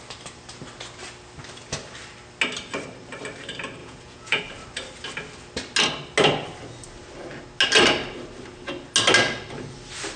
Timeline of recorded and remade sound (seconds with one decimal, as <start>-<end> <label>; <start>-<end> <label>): 0.0-3.8 recorded; 3.8-4.4 remade; 4.4-10.2 recorded